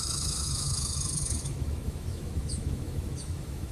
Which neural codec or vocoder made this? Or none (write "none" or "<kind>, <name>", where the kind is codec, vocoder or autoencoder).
autoencoder, DAC-VAE